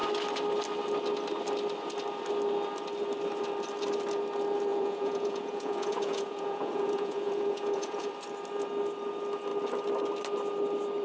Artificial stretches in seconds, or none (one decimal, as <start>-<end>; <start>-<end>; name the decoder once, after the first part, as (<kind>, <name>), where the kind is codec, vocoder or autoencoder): 4.7-8.1 (vocoder, Vocos)